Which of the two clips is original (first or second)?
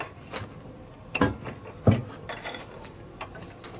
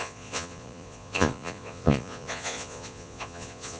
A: first